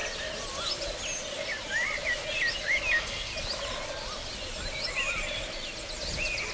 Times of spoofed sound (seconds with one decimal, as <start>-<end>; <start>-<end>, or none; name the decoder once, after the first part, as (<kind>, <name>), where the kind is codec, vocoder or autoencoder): 2.9-3.3 (codec, SNAC)